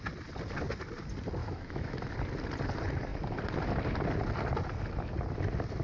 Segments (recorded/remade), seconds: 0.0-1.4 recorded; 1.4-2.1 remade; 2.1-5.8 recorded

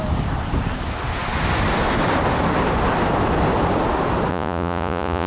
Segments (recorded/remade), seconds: 0.0-4.3 recorded; 4.3-5.3 remade

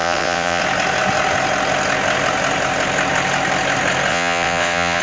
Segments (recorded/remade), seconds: 0.0-0.6 remade; 0.6-4.1 recorded; 4.1-5.0 remade

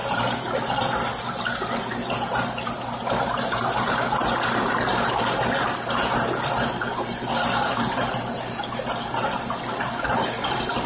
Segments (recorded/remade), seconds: 0.0-10.9 recorded

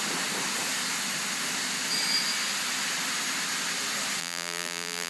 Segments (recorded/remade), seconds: 0.0-4.2 recorded; 4.2-5.1 remade

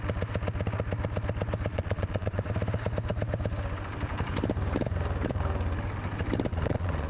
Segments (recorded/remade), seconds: 0.0-1.7 recorded; 1.7-2.5 remade; 2.5-6.5 recorded; 6.5-7.1 remade

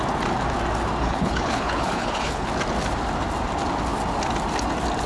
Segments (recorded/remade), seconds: 0.0-1.0 recorded; 1.0-2.5 remade; 2.5-5.1 recorded

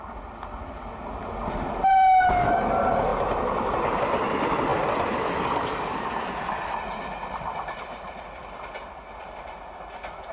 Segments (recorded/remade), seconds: 0.0-10.3 recorded